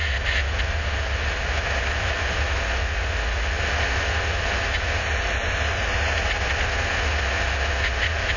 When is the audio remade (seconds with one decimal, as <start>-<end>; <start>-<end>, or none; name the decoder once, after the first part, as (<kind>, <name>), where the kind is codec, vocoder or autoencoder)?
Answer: none